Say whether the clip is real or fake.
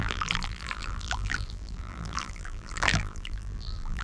fake